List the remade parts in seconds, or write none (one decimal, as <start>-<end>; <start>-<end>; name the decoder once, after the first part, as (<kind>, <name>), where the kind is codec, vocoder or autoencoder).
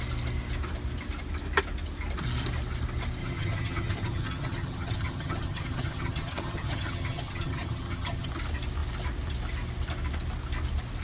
3.2-8.3 (vocoder, HiFi-GAN)